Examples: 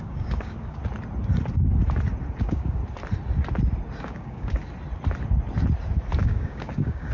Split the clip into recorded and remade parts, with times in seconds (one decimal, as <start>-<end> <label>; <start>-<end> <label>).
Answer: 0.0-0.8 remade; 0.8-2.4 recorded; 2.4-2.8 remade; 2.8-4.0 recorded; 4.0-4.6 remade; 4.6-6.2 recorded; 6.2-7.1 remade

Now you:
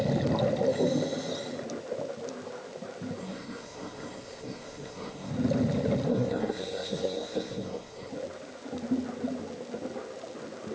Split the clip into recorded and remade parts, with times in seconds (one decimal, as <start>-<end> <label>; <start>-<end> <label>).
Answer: 0.0-3.2 recorded; 3.2-5.3 remade; 5.3-6.1 recorded; 6.1-8.1 remade; 8.1-10.7 recorded

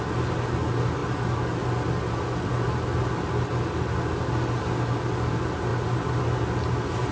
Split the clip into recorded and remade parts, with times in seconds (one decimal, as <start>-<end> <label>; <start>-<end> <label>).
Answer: 0.0-7.1 recorded

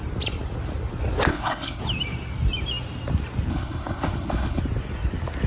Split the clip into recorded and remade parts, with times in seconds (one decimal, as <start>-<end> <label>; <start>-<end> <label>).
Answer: 0.0-1.3 recorded; 1.3-1.8 remade; 1.8-3.5 recorded; 3.5-4.6 remade; 4.6-5.5 recorded

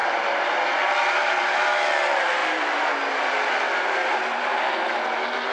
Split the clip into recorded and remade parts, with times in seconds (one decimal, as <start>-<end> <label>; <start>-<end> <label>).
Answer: 0.0-2.4 recorded; 2.4-5.1 remade; 5.1-5.5 recorded

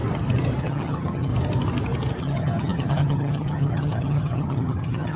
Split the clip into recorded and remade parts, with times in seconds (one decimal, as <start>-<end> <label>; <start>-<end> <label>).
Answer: 0.0-0.6 recorded; 0.6-1.3 remade; 1.3-2.2 recorded; 2.2-5.2 remade

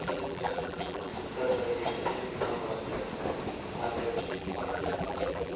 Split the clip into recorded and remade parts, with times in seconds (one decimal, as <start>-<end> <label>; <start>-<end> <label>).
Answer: 0.0-1.1 remade; 1.1-4.2 recorded; 4.2-5.6 remade

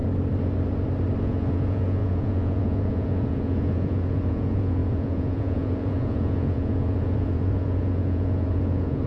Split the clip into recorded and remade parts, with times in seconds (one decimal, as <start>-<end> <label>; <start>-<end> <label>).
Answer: 0.0-1.2 recorded; 1.2-9.1 remade